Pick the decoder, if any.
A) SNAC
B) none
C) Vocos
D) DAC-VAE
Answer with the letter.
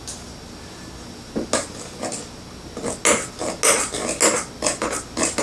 B